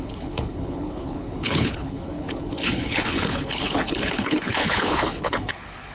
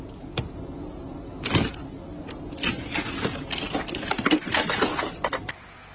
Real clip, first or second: second